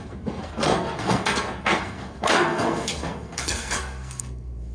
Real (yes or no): no